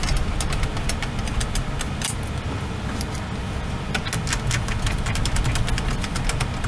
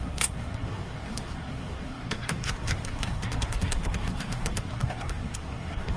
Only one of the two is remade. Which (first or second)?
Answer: second